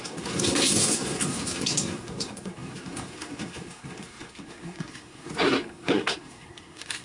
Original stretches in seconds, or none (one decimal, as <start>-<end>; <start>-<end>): none